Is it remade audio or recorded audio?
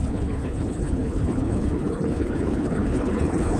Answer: remade